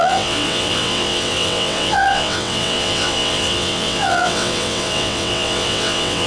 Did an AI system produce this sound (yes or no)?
yes